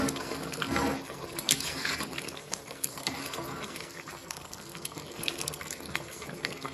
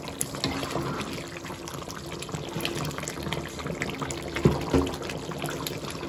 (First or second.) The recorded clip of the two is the second